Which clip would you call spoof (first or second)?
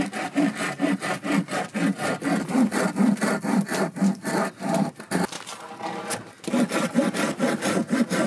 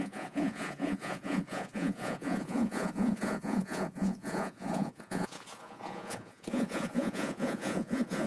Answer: second